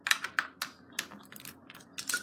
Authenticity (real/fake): real